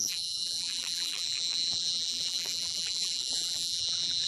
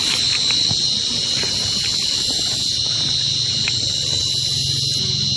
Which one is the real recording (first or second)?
second